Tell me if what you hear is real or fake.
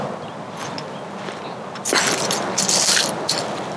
real